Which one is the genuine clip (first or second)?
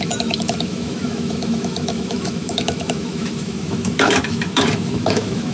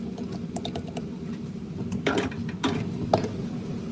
second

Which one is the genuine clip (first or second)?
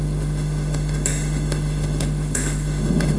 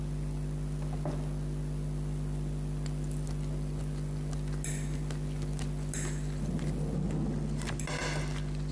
second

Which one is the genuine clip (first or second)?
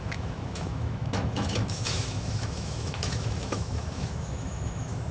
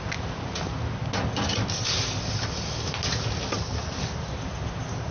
second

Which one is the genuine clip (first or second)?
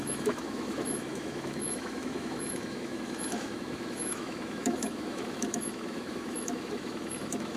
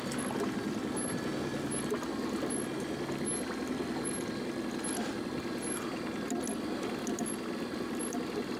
second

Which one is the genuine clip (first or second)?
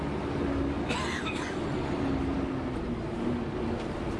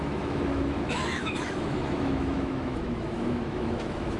first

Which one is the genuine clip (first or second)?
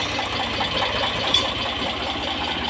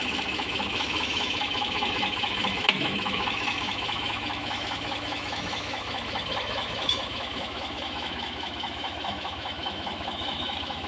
first